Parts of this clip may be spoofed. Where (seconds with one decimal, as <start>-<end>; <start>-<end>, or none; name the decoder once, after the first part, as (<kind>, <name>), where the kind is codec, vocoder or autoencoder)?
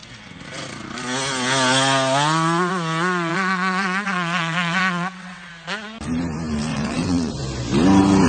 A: 3.3-5.5 (vocoder, WaveNeXt); 6.7-7.3